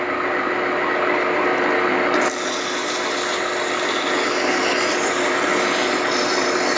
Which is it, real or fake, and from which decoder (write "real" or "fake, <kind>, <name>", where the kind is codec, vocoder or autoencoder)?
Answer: real